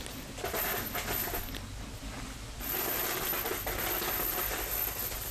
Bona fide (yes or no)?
yes